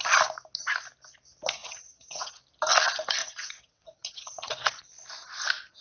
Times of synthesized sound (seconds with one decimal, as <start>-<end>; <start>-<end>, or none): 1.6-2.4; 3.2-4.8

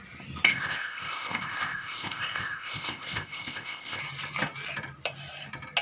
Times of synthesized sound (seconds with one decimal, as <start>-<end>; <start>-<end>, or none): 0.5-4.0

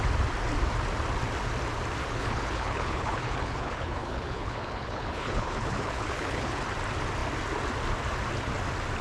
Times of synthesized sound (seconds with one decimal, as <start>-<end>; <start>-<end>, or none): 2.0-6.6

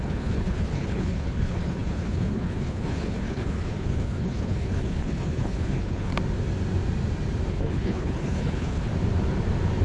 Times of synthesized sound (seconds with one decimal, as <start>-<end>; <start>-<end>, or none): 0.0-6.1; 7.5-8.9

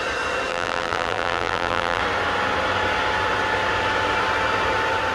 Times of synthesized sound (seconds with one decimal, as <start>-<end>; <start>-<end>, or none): 0.5-2.0

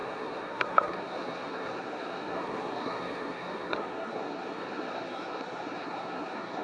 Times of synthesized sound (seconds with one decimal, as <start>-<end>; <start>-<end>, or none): 0.0-6.6